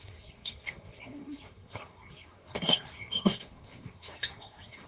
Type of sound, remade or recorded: remade